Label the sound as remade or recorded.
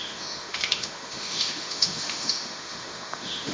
remade